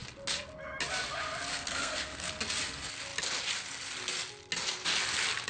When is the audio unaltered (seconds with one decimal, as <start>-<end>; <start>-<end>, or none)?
0.0-1.5; 2.3-5.5